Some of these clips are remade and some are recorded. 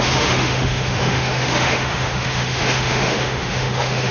remade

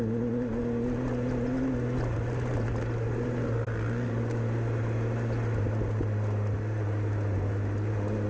recorded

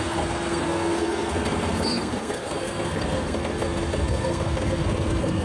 remade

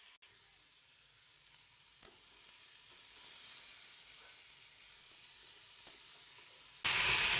recorded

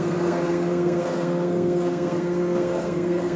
remade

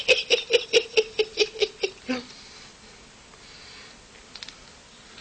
recorded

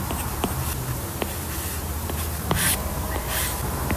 remade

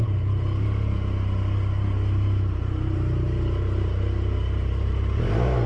recorded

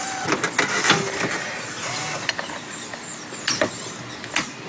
recorded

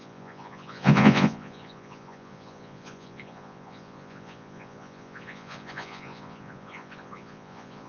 remade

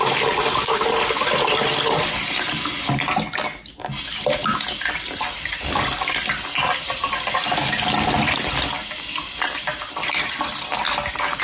recorded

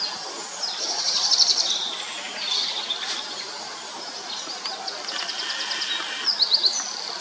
recorded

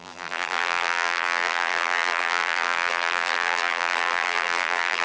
remade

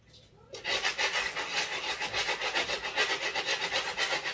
recorded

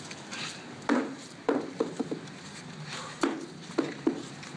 recorded